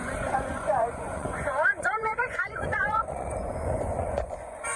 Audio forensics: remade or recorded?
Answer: remade